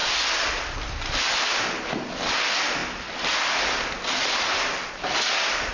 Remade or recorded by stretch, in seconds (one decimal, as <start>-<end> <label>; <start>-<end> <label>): 0.0-5.7 recorded